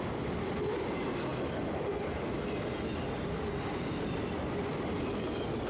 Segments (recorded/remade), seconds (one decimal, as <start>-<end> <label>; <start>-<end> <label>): 0.0-5.7 recorded